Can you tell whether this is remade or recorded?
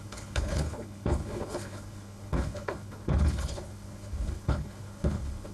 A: remade